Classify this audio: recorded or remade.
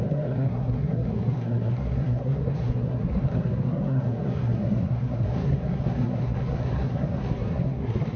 remade